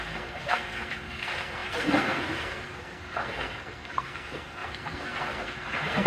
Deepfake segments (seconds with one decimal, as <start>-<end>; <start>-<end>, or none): 0.0-6.1